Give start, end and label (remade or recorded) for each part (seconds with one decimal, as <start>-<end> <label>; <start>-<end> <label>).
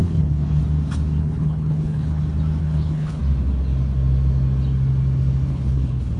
0.0-0.6 remade; 0.6-1.2 recorded; 1.2-2.2 remade; 2.2-2.6 recorded; 2.6-3.2 remade; 3.2-5.5 recorded; 5.5-6.2 remade